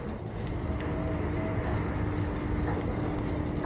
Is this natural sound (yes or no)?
yes